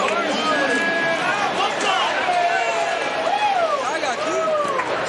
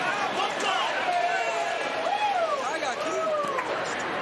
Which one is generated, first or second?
second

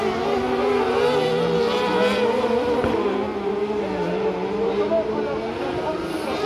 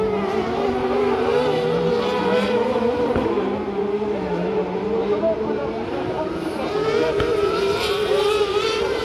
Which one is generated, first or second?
second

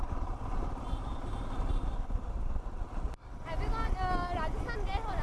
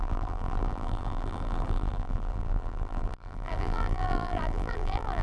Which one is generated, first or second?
second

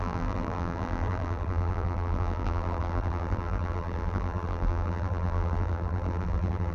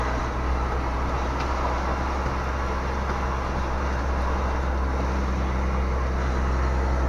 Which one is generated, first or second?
first